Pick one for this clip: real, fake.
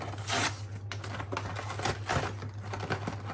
real